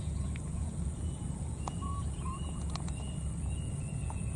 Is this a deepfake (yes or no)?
yes